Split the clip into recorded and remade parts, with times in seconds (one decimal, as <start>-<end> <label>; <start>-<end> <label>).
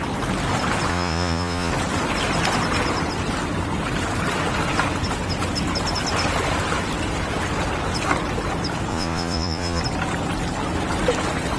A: 0.0-0.9 recorded; 0.9-1.7 remade; 1.7-8.9 recorded; 8.9-9.8 remade; 9.8-11.6 recorded